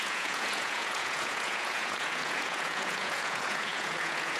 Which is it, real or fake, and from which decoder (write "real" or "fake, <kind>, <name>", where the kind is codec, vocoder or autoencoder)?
fake, vocoder, Vocos